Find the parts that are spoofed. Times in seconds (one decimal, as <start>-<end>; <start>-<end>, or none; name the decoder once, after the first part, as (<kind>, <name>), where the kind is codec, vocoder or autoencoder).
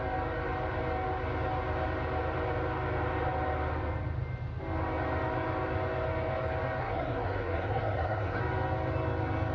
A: 6.8-8.4 (codec, SNAC)